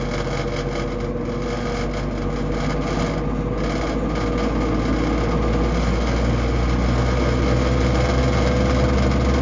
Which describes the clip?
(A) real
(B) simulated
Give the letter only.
A